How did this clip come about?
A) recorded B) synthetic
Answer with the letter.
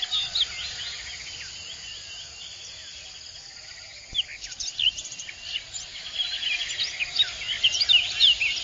A